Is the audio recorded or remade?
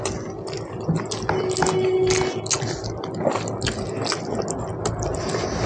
recorded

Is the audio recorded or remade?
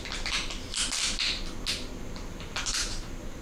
recorded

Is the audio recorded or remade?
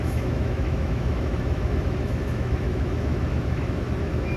remade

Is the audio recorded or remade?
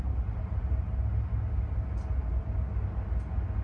recorded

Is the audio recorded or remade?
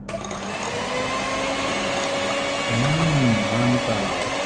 recorded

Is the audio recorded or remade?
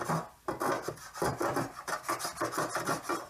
remade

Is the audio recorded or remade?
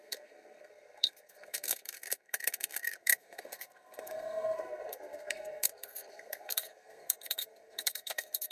remade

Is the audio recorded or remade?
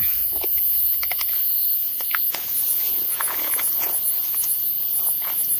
remade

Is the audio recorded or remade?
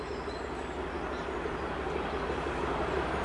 recorded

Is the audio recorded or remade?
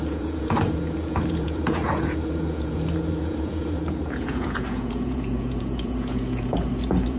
remade